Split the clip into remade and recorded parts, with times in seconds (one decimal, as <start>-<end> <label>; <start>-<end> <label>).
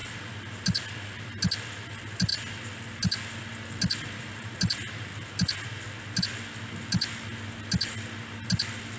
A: 0.0-9.0 recorded